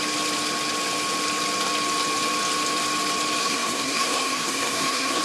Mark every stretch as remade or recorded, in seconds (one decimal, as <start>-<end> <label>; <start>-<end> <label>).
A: 0.0-3.4 recorded; 3.4-5.2 remade